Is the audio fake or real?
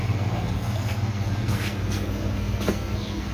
fake